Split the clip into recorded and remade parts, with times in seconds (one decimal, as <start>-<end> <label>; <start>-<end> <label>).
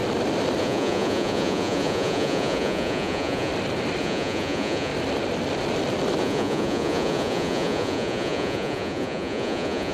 0.0-0.6 recorded; 0.6-3.5 remade; 3.5-4.0 recorded; 4.0-4.9 remade; 4.9-6.2 recorded; 6.2-9.9 remade